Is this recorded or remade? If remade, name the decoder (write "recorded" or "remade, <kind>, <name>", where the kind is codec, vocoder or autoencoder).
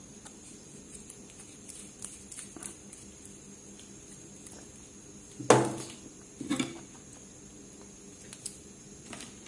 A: recorded